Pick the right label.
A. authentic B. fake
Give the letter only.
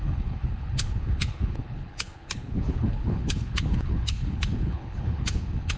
B